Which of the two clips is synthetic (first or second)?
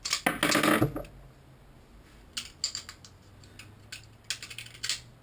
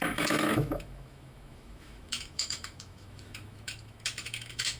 second